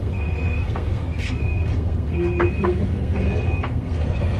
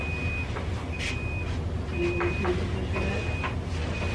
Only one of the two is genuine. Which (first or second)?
second